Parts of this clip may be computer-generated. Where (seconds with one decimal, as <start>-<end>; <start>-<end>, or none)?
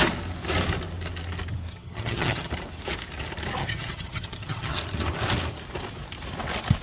1.7-2.5; 3.6-4.8